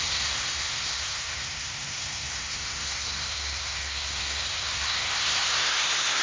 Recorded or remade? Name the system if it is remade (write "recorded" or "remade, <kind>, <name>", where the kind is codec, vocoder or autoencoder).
remade, codec, SNAC